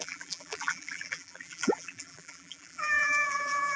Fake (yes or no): yes